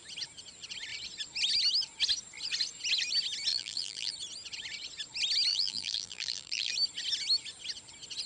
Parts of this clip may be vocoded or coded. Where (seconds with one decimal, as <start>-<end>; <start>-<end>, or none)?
3.5-4.1; 5.5-6.7